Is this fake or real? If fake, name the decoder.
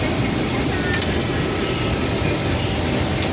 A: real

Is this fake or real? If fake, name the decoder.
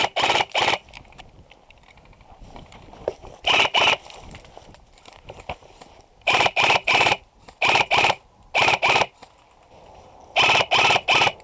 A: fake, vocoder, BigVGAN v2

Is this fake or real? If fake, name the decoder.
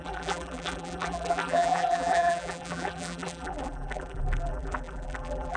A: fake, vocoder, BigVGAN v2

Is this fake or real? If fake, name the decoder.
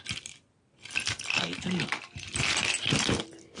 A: real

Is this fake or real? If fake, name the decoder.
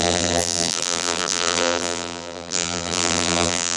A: fake, vocoder, BigVGAN v2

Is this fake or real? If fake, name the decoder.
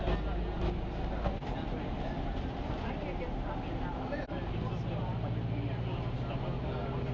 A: real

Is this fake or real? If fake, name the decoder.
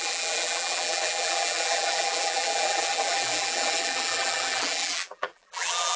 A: fake, vocoder, BigVGAN v2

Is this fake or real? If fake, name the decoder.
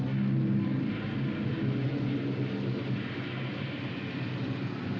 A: real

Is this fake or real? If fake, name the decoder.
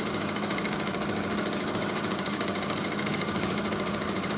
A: fake, codec, DAC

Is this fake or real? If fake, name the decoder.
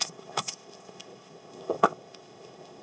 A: fake, codec, ZipCodec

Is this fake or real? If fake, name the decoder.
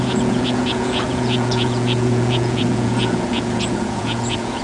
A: fake, vocoder, Vocos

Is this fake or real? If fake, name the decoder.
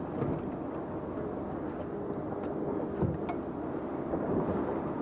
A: real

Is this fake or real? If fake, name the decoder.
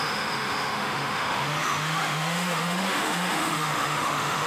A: fake, autoencoder, DAC-VAE